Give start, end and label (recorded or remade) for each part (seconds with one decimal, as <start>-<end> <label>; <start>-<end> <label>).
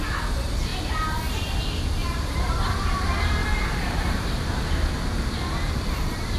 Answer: 0.0-2.0 recorded; 2.0-3.0 remade; 3.0-3.4 recorded; 3.4-4.7 remade; 4.7-6.4 recorded